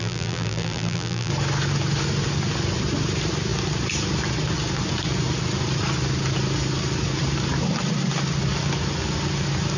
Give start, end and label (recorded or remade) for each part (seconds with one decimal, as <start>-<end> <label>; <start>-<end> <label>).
0.0-1.3 remade; 1.3-9.8 recorded